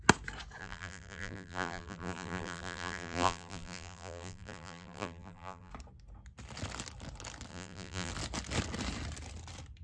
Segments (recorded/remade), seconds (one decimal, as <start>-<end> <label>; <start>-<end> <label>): 0.0-0.6 recorded; 0.6-5.7 remade; 5.7-7.5 recorded; 7.5-8.1 remade; 8.1-9.8 recorded